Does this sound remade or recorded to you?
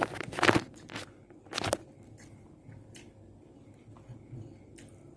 recorded